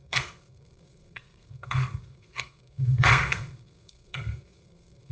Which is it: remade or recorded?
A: remade